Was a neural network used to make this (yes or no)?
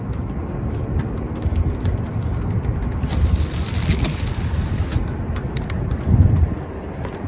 no